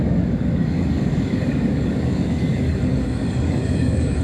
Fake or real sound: fake